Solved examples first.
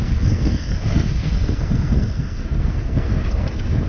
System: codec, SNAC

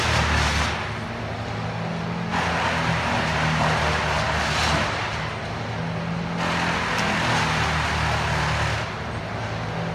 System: none